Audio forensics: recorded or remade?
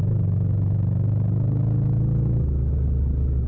recorded